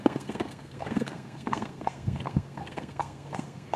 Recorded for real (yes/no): no